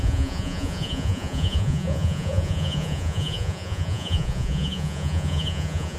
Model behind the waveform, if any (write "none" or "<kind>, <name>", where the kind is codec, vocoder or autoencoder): vocoder, Vocos